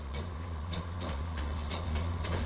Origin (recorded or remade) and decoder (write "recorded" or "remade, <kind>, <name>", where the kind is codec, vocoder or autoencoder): remade, vocoder, Vocos